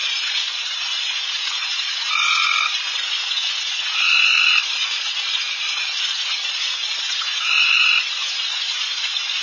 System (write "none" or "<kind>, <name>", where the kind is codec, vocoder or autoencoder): vocoder, BigVGAN v2